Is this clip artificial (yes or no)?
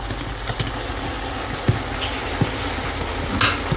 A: no